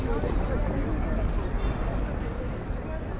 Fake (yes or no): no